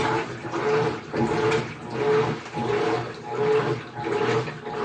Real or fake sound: real